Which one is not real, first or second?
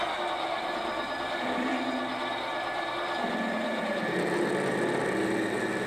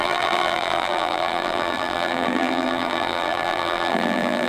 second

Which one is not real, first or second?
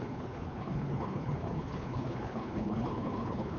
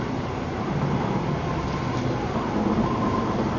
first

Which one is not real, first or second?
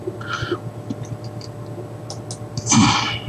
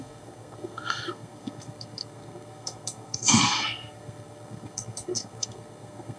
second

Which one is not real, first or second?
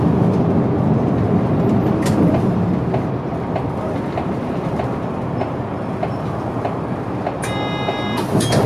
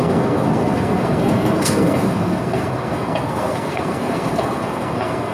second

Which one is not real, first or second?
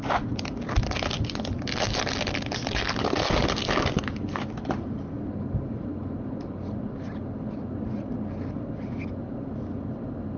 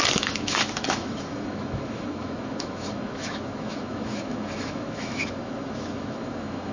second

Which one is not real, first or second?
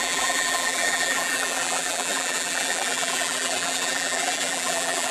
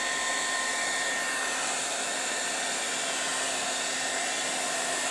first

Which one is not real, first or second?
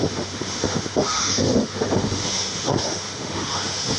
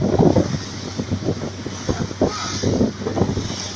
first